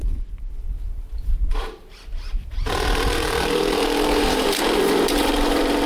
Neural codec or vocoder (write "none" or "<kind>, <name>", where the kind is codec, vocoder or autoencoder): vocoder, BigVGAN v2